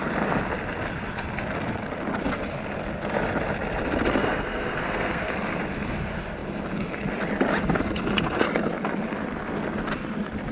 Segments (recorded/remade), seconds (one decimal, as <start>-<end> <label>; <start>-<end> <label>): 0.0-4.2 recorded; 4.2-5.3 remade; 5.3-10.5 recorded